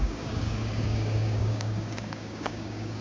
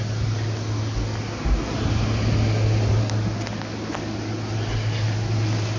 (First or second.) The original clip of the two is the second